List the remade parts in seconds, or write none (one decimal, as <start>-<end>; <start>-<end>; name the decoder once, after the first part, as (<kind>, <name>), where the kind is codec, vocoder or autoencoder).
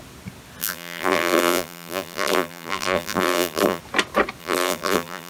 0.6-3.8 (vocoder, BigVGAN v2); 4.4-5.3